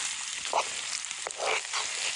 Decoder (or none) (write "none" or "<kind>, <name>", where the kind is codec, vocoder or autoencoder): none